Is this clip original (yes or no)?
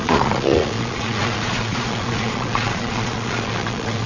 no